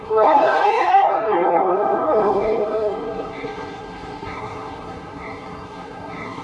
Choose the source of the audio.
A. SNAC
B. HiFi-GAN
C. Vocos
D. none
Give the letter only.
A